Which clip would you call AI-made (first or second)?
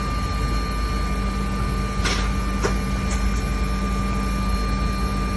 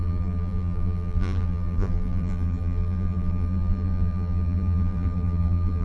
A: second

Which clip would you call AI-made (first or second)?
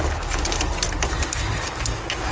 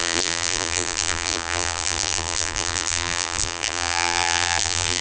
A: second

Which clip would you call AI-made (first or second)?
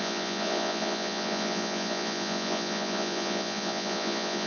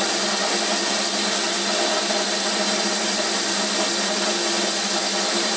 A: first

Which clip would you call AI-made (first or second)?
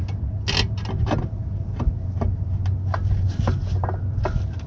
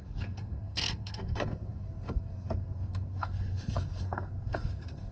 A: second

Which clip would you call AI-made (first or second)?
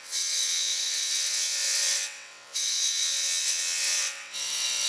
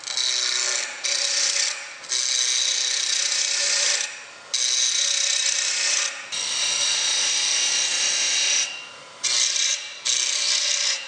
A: first